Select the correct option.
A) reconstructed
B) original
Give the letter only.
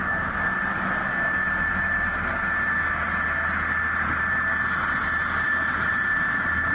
B